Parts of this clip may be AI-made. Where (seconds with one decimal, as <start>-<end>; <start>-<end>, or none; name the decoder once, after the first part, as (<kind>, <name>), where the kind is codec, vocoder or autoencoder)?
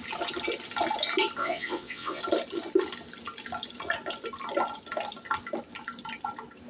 1.4-2.2 (vocoder, WaveNeXt)